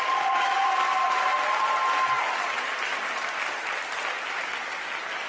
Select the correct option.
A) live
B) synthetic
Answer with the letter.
A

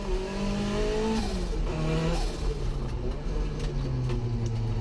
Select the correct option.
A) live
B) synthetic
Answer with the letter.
A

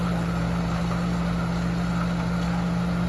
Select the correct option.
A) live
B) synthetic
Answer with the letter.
A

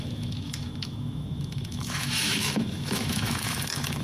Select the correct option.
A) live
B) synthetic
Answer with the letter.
B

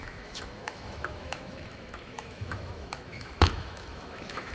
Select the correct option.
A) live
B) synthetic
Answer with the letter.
B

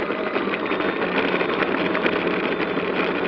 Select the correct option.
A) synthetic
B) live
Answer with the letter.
B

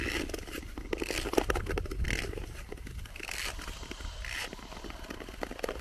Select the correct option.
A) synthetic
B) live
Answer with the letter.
B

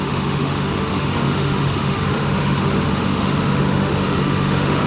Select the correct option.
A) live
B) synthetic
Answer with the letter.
B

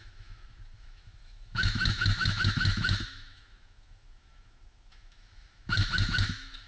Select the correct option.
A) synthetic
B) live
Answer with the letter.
A